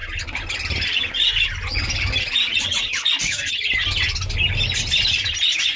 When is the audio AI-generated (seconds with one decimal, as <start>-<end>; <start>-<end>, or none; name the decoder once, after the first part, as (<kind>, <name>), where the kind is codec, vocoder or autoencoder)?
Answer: 0.0-3.5 (vocoder, BigVGAN v2)